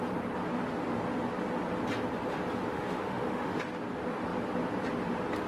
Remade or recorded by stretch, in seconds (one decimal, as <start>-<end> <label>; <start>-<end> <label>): 0.0-2.7 recorded; 2.7-3.6 remade; 3.6-5.5 recorded